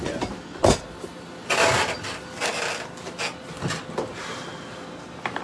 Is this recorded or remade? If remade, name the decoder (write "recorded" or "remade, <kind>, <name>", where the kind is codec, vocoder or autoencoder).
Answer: recorded